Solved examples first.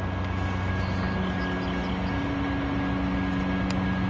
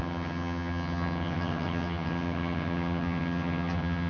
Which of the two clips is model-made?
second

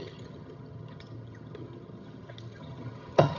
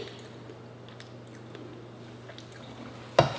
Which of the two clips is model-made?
first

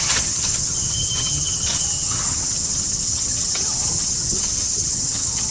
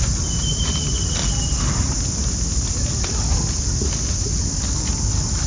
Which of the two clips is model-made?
first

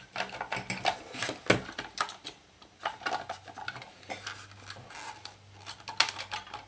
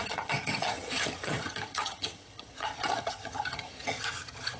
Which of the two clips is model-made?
second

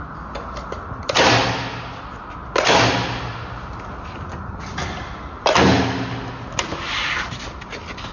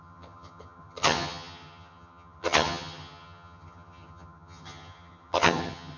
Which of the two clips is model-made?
second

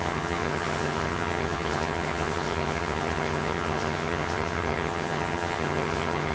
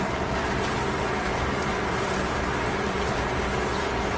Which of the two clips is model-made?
first